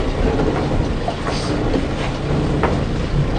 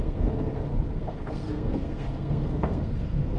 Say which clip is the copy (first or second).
second